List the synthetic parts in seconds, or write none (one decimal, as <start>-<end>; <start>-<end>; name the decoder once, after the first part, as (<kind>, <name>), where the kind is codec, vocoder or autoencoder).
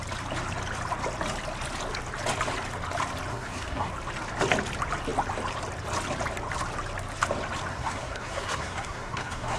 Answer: 3.3-3.9 (codec, SNAC); 7.7-9.6